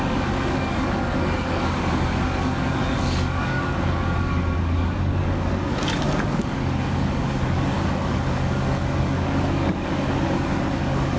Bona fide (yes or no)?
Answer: no